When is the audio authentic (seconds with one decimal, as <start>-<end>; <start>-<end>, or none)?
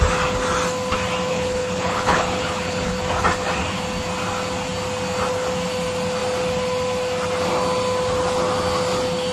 0.0-1.3; 2.9-9.3